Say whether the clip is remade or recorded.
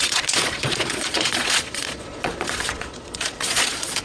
remade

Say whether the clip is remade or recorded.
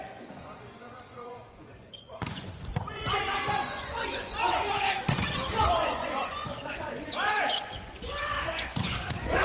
remade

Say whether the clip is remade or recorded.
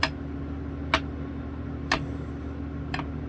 recorded